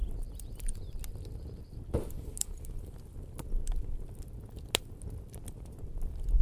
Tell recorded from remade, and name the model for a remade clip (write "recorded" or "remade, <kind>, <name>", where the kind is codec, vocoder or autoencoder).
recorded